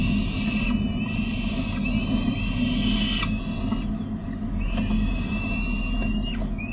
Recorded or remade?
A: recorded